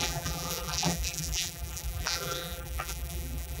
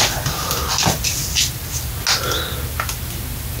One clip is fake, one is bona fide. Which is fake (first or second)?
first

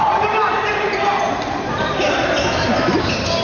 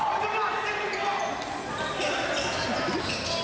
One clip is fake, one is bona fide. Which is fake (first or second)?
first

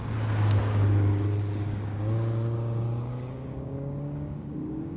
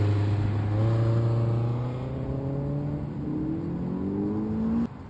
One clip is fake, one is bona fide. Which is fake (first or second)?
first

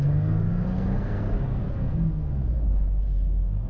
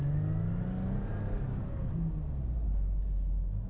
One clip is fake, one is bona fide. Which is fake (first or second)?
first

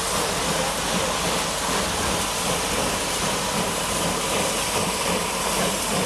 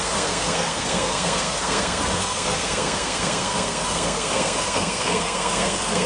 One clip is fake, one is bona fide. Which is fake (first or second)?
second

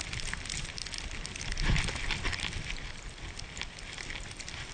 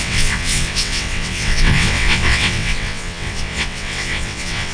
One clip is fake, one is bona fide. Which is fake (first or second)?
second